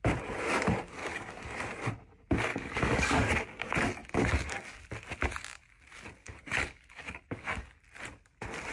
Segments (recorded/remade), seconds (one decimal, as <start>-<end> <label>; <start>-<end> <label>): 0.0-1.0 recorded; 1.0-1.6 remade; 1.6-2.5 recorded; 2.5-3.3 remade; 3.3-4.0 recorded; 4.0-4.8 remade; 4.8-6.2 recorded; 6.2-7.8 remade; 7.8-8.7 recorded